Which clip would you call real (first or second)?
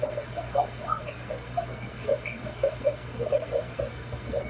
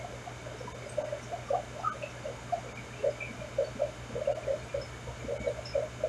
second